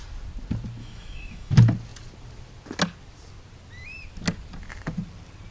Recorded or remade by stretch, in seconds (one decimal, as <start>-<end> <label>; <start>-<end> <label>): 0.0-0.8 recorded; 0.8-1.5 remade; 1.5-5.5 recorded